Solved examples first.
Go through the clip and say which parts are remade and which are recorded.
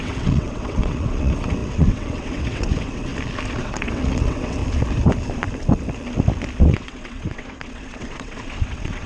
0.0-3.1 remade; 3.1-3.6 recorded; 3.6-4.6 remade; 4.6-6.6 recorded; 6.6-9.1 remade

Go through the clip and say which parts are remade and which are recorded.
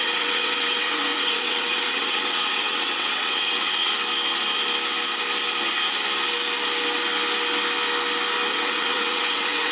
0.0-3.9 remade; 3.9-8.5 recorded; 8.5-9.7 remade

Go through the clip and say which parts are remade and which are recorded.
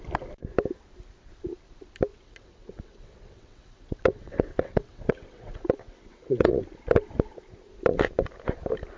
0.0-2.1 recorded; 2.1-6.6 remade; 6.6-9.0 recorded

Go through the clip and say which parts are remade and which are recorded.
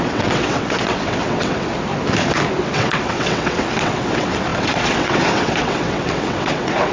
0.0-1.7 remade; 1.7-2.6 recorded; 2.6-6.9 remade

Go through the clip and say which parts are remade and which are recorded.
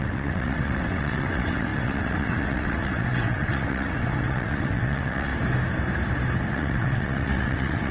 0.0-5.3 remade; 5.3-6.5 recorded; 6.5-7.9 remade